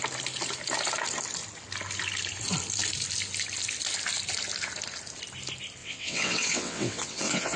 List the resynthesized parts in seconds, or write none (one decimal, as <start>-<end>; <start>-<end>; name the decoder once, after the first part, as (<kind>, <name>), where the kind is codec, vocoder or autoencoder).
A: 5.8-7.6 (vocoder, WaveNeXt)